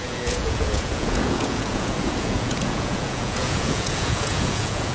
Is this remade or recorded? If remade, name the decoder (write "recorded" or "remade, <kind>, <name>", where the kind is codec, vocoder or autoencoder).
remade, vocoder, Vocos